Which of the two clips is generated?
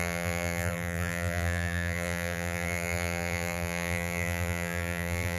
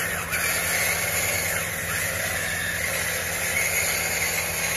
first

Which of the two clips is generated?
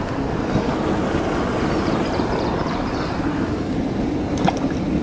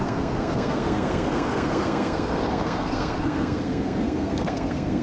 second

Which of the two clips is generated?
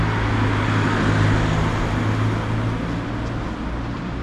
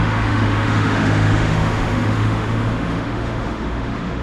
second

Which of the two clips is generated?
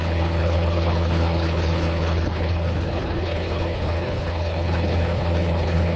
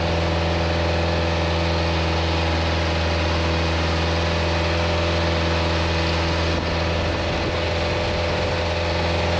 first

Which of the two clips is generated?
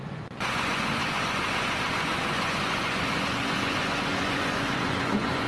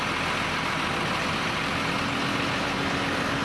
first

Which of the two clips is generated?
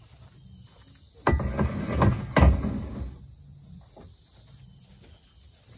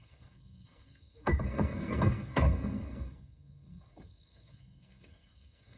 second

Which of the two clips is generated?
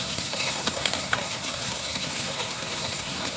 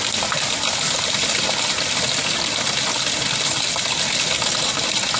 first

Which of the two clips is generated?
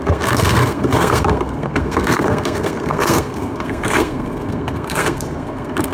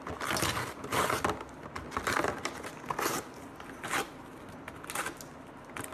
first